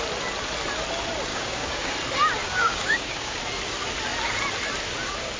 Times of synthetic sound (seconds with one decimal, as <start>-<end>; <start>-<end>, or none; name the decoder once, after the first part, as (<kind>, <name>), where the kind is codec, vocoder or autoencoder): 1.3-1.9 (codec, DAC); 2.4-3.4